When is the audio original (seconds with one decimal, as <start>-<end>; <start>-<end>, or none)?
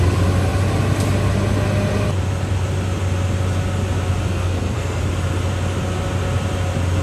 0.0-4.3; 5.0-7.0